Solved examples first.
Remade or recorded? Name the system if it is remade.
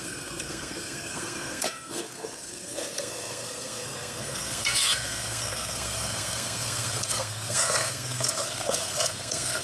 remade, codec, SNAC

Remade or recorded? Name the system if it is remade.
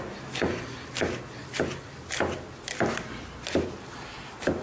recorded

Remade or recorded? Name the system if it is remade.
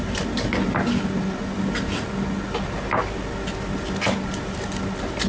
recorded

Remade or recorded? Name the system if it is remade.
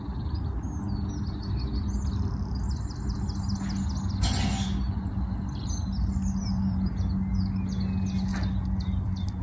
recorded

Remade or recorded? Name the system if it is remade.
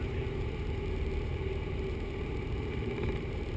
remade, vocoder, BigVGAN v2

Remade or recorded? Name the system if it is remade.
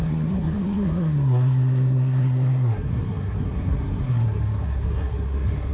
remade, codec, SNAC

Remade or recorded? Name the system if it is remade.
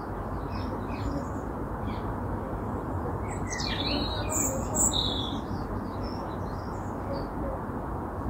recorded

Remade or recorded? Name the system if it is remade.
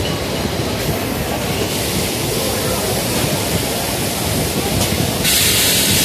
remade, vocoder, BigVGAN v2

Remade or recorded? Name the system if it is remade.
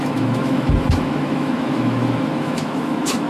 remade, autoencoder, DAC-VAE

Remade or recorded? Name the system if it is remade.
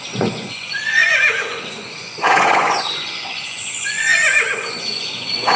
remade, vocoder, Vocos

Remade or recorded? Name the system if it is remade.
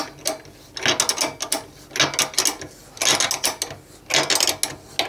recorded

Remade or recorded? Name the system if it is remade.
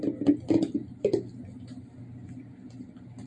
recorded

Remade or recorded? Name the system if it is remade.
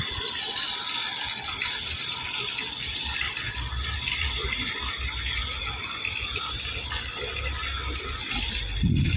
recorded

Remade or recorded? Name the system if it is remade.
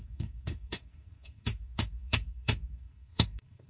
remade, codec, SNAC